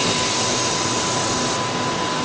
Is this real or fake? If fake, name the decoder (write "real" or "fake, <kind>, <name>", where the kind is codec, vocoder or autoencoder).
real